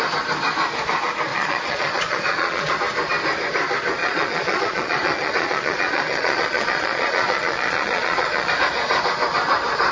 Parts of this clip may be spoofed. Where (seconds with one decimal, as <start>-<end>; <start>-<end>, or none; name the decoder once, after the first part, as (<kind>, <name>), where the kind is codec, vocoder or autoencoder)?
1.3-2.7 (vocoder, Vocos); 4.0-8.5